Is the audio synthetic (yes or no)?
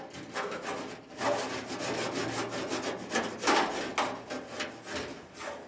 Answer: no